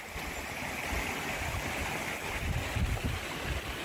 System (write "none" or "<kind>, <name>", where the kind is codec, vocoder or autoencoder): none